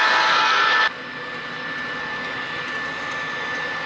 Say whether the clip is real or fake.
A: real